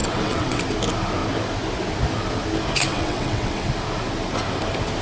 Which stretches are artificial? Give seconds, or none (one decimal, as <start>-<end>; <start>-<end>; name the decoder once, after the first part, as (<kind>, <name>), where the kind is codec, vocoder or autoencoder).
0.0-0.6 (vocoder, WaveNeXt); 2.9-3.7